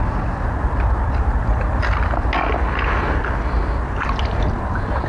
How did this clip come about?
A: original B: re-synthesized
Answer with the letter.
A